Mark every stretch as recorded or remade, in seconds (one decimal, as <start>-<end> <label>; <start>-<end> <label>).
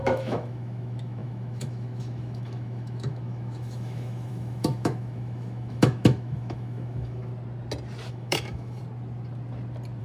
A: 0.0-7.3 remade; 7.3-8.1 recorded; 8.1-8.8 remade; 8.8-10.0 recorded